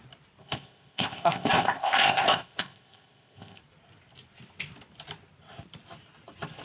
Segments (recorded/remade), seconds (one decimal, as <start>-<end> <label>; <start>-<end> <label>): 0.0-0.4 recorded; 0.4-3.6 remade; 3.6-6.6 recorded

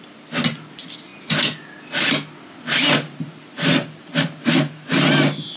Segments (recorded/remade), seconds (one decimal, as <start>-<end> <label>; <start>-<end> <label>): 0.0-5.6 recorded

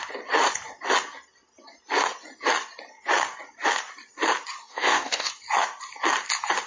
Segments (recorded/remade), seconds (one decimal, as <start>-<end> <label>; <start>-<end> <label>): 0.0-4.7 recorded; 4.7-5.3 remade; 5.3-6.7 recorded

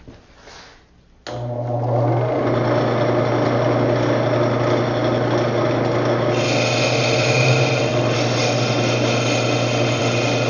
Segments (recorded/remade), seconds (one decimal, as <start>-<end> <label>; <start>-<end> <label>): 0.0-10.5 recorded